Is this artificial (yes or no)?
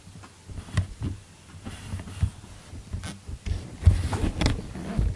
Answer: no